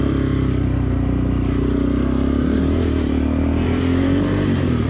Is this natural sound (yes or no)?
no